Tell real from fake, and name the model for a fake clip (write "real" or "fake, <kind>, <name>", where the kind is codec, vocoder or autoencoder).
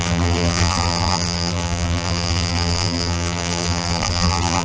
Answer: fake, vocoder, BigVGAN v2